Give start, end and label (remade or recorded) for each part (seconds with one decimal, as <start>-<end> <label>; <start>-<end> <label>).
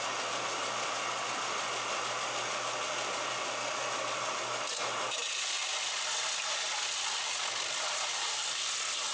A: 0.0-9.1 recorded